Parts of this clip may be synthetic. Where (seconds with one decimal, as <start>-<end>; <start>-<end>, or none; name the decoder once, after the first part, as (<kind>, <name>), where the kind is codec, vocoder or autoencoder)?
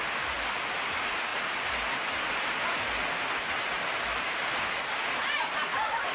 none